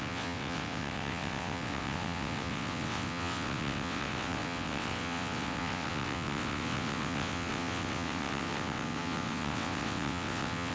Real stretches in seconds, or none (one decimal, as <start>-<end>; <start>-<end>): none